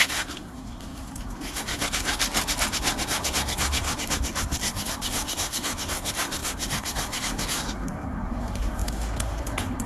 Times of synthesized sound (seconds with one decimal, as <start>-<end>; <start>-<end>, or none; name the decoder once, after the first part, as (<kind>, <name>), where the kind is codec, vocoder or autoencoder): 0.0-2.2 (codec, SNAC); 2.7-9.9